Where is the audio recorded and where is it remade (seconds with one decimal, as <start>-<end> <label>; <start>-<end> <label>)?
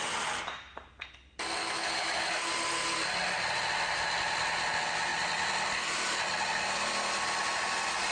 0.0-1.6 recorded; 1.6-2.3 remade; 2.3-8.1 recorded